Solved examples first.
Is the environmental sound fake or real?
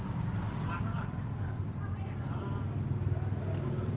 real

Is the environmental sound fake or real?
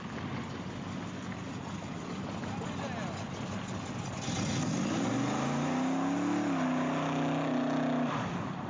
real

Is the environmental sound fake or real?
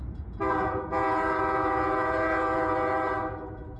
fake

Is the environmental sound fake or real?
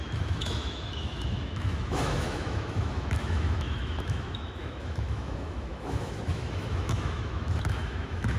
fake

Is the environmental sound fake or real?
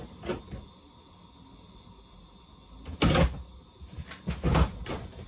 real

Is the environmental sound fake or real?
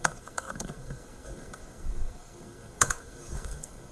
fake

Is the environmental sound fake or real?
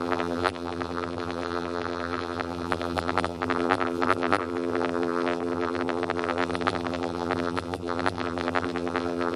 fake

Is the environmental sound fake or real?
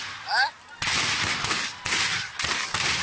fake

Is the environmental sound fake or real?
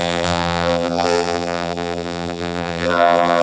fake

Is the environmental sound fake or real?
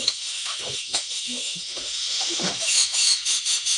fake